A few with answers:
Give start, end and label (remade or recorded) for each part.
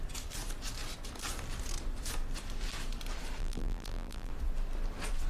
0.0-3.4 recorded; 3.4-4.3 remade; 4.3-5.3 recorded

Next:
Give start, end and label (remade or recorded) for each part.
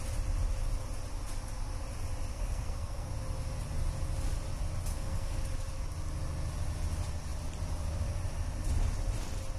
0.0-2.3 recorded; 2.3-3.1 remade; 3.1-4.9 recorded; 4.9-5.4 remade; 5.4-9.6 recorded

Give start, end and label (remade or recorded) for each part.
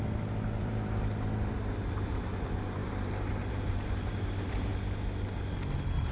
0.0-0.6 recorded; 0.6-4.7 remade; 4.7-6.1 recorded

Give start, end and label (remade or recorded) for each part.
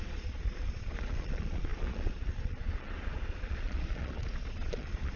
0.0-5.2 remade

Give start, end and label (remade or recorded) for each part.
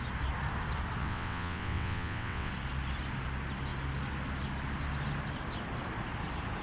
0.0-1.0 recorded; 1.0-2.5 remade; 2.5-6.6 recorded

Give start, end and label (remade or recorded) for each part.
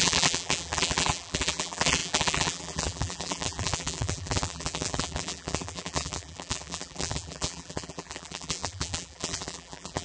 0.0-10.0 remade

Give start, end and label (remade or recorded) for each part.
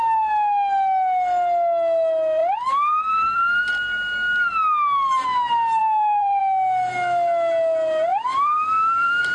0.0-2.4 recorded; 2.4-3.7 remade; 3.7-5.8 recorded; 5.8-6.4 remade; 6.4-8.1 recorded; 8.1-9.3 remade